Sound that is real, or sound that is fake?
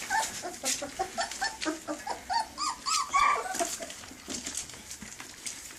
real